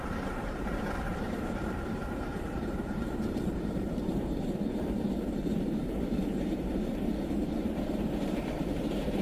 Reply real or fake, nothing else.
fake